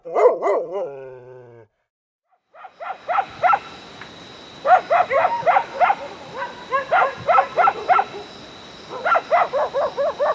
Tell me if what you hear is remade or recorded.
recorded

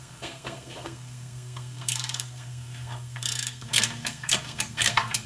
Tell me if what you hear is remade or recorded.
remade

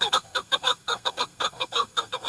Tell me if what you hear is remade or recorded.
remade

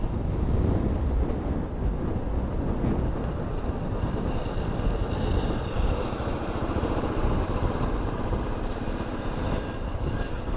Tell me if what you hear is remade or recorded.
recorded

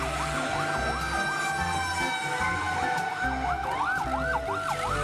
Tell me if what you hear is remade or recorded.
recorded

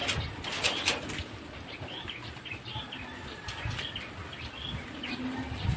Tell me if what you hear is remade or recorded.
recorded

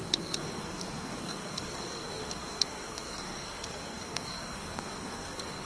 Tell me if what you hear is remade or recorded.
remade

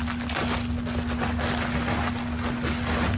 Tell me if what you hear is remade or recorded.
recorded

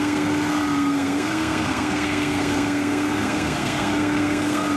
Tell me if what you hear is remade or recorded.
remade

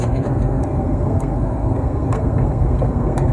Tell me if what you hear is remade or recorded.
remade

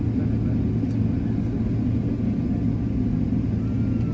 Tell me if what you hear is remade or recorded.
recorded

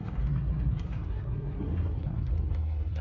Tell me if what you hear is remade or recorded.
remade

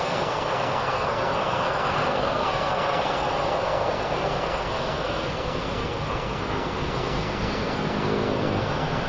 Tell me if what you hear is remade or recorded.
remade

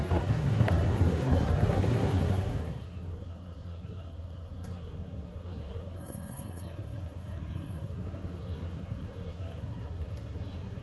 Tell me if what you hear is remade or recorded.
remade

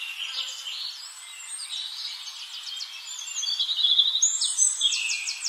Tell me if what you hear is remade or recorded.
recorded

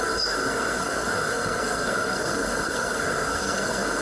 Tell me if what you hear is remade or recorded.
remade